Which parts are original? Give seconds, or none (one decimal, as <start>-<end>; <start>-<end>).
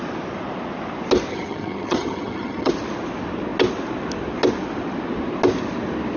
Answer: 0.0-1.3; 2.7-6.2